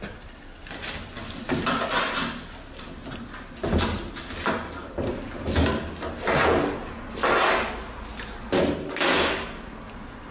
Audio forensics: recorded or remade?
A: recorded